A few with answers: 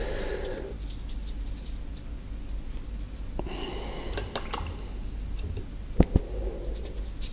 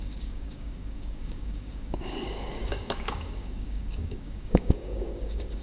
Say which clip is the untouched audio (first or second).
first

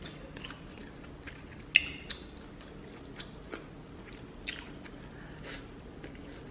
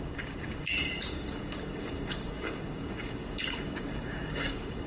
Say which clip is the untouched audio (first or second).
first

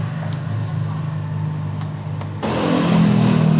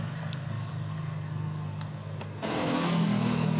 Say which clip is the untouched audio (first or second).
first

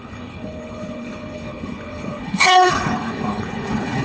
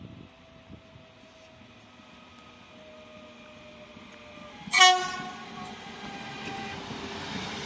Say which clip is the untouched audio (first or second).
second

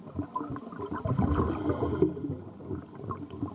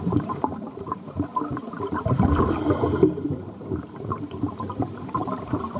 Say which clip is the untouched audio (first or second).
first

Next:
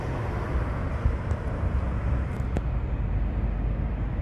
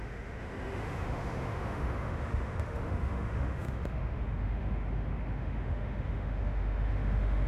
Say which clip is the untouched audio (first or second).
first